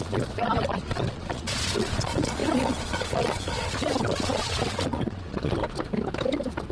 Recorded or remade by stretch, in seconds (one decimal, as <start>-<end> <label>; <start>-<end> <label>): 0.0-5.6 remade; 5.6-6.7 recorded